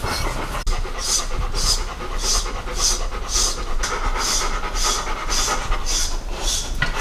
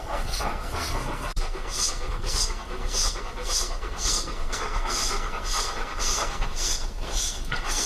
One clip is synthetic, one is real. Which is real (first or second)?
first